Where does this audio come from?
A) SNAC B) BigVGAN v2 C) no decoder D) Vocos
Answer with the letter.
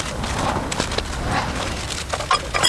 C